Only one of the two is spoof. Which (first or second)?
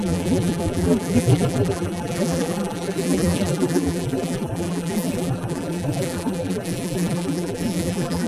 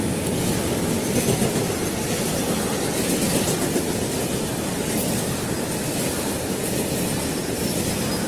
first